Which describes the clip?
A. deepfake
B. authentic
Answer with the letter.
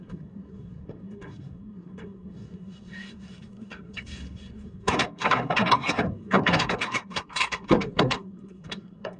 A